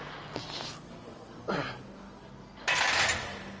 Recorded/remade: recorded